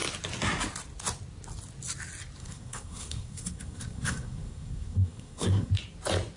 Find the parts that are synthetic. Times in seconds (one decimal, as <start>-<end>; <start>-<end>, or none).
2.4-5.7